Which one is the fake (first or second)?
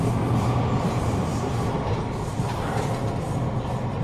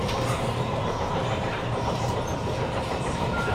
second